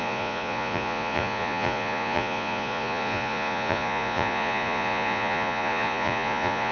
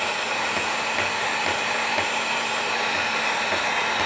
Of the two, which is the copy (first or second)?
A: first